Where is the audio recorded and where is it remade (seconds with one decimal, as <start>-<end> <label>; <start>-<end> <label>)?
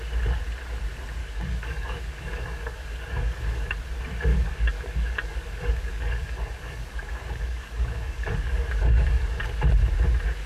0.0-1.2 recorded; 1.2-3.7 remade; 3.7-4.3 recorded; 4.3-9.4 remade; 9.4-10.5 recorded